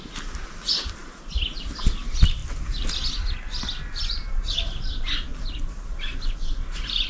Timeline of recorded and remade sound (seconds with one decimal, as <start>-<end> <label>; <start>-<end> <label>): 0.0-1.0 recorded; 1.0-1.8 remade; 1.8-7.1 recorded